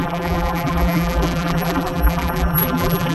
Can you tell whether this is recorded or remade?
remade